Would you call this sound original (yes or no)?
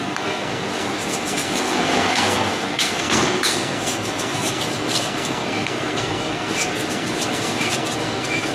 no